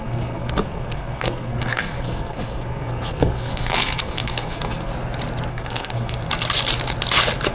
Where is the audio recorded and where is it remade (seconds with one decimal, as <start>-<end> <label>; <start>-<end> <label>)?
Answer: 0.0-4.9 remade; 4.9-5.5 recorded; 5.5-6.2 remade; 6.2-7.5 recorded